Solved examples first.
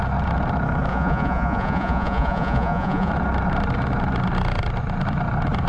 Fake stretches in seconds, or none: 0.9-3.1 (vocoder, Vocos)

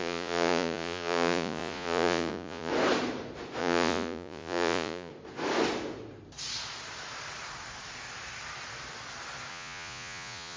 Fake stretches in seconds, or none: 0.0-2.7 (vocoder, Vocos); 3.6-5.1; 9.5-10.6

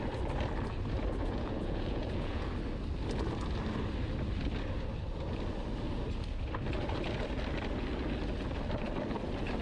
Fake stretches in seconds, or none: 1.2-2.5 (vocoder, Vocos)

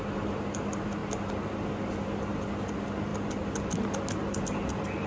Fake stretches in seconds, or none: none

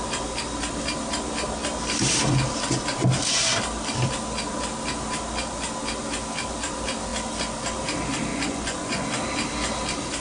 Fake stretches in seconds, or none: 8.3-9.1 (vocoder, Vocos)

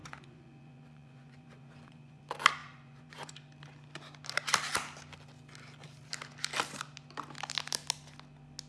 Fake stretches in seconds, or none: 0.0-2.2 (vocoder, Vocos); 2.6-3.3

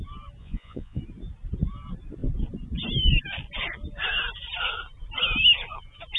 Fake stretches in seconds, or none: 0.4-1.0 (vocoder, Vocos)